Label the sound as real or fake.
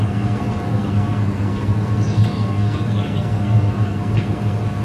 fake